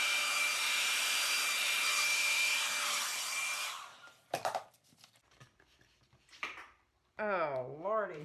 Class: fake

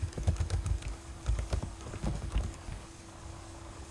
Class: fake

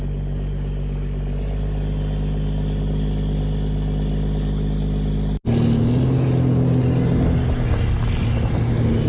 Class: real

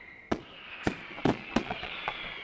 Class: fake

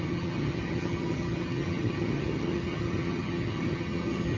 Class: fake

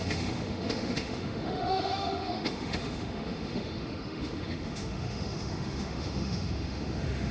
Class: fake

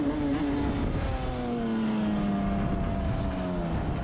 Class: real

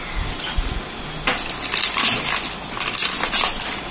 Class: real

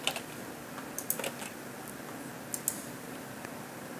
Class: real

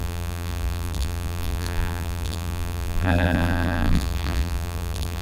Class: fake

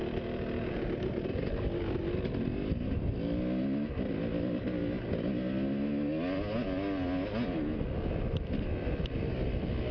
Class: real